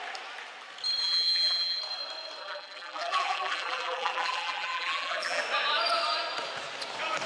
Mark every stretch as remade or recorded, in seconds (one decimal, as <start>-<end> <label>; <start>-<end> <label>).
0.0-1.0 recorded; 1.0-1.8 remade; 1.8-2.4 recorded; 2.4-5.4 remade; 5.4-7.3 recorded